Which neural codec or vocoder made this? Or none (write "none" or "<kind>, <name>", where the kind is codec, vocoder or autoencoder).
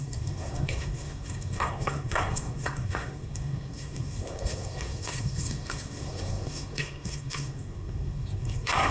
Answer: codec, SNAC